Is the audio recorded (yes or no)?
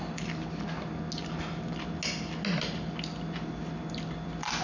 yes